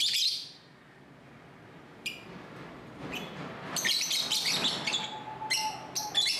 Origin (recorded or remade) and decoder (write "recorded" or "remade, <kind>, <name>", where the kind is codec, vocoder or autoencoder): recorded